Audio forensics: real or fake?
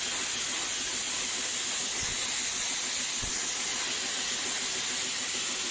real